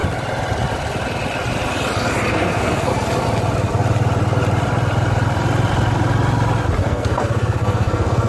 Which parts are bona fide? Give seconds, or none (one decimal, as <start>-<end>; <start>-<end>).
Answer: 0.0-2.3; 2.9-6.8

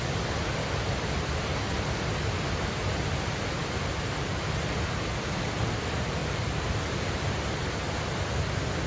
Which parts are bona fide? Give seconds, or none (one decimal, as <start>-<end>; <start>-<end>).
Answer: 0.0-6.2; 6.8-8.9

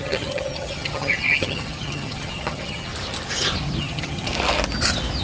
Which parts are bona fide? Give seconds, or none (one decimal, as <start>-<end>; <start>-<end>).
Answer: 2.9-3.8; 4.3-5.2

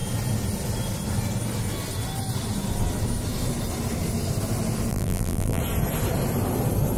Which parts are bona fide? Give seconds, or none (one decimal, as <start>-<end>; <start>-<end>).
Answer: 0.0-4.9; 5.6-7.0

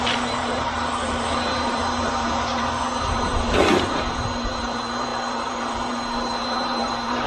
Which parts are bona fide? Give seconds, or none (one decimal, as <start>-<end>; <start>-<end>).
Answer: none

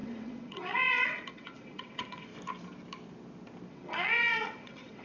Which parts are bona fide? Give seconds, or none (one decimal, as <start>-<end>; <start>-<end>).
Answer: 2.3-3.7

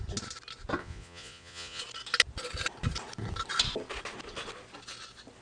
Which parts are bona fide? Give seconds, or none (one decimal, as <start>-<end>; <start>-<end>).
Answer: 0.0-0.8; 1.8-5.4